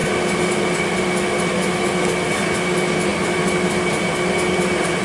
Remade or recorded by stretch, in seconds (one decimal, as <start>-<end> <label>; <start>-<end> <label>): 0.0-5.0 recorded